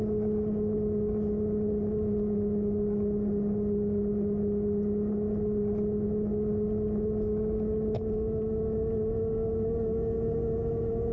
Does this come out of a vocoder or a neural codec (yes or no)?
no